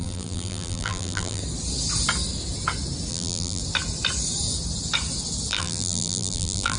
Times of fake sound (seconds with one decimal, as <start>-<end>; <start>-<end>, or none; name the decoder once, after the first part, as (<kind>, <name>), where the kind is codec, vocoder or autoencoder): 0.0-1.4 (vocoder, BigVGAN v2); 3.1-3.6; 5.5-6.8